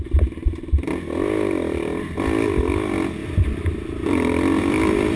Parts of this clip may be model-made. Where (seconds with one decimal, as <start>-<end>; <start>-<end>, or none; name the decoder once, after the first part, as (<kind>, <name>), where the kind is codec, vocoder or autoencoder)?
3.2-4.6 (vocoder, BigVGAN v2)